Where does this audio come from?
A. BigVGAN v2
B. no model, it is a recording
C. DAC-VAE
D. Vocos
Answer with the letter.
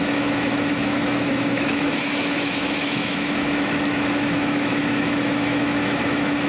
C